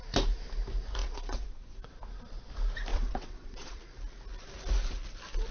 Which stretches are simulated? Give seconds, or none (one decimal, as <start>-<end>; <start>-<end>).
1.0-1.6; 2.9-3.8